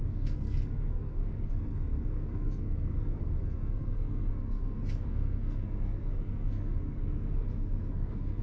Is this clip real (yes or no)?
no